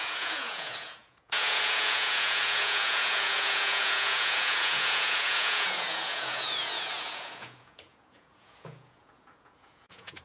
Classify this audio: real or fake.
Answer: fake